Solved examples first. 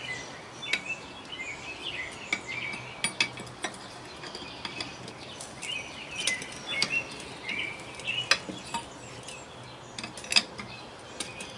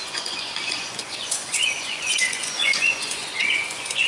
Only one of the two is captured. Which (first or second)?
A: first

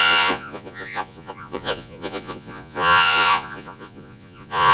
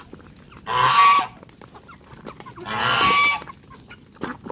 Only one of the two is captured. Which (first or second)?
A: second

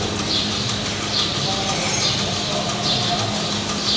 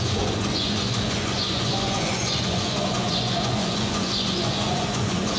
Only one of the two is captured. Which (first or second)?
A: first